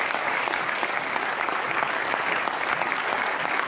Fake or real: fake